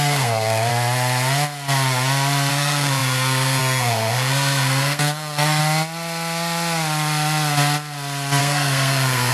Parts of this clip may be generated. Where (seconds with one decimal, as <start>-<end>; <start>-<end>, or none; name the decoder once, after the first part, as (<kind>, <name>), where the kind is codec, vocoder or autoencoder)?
0.0-0.7 (codec, SNAC); 2.5-5.6; 8.4-9.3